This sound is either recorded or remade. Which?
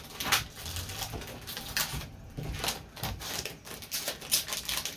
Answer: recorded